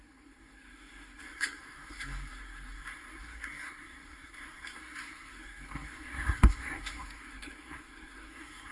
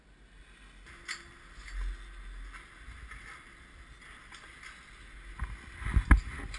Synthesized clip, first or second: first